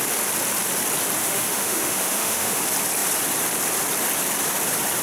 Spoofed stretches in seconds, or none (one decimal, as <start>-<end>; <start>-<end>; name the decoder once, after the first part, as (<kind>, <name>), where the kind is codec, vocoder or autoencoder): 1.2-2.6 (autoencoder, DAC-VAE)